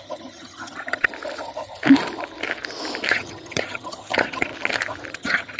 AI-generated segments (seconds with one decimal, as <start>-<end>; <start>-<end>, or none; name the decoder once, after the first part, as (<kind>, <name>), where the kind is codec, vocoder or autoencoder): 0.0-1.1 (vocoder, HiFi-GAN); 3.1-4.5; 5.1-5.6